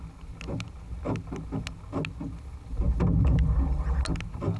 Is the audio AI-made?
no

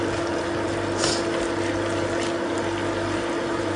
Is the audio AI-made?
no